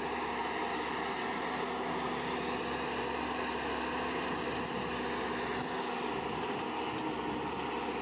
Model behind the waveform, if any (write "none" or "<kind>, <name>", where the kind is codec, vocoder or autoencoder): none